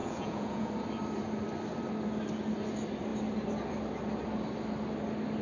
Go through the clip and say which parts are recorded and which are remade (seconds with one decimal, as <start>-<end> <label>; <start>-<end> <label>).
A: 0.0-0.7 remade; 0.7-5.4 recorded